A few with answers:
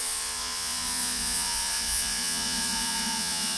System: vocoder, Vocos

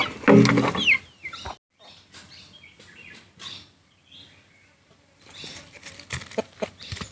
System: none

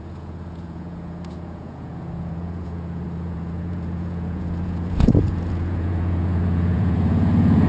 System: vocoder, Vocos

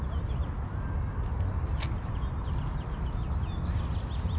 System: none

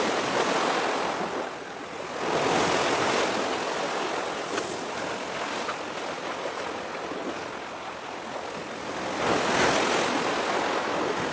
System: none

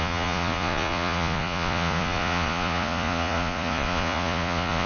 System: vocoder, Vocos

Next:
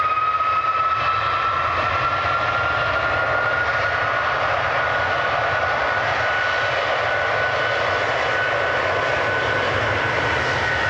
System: none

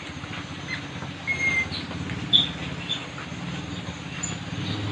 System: none